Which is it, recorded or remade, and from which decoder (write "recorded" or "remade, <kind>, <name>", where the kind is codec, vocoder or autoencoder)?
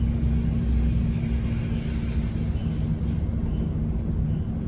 recorded